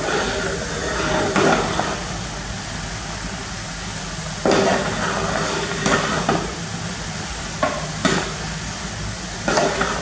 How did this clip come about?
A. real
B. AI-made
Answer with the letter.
A